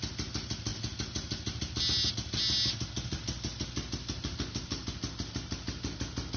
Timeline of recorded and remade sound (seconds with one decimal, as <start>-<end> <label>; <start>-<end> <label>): 0.0-6.4 recorded